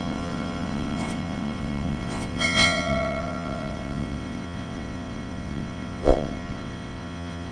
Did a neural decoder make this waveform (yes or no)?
yes